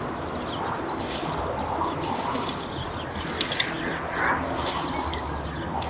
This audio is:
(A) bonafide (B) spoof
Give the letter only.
A